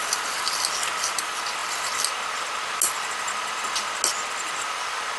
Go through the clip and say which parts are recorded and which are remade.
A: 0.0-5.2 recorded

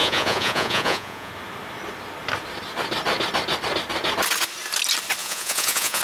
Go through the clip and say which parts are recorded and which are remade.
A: 0.0-1.3 remade; 1.3-5.2 recorded; 5.2-6.0 remade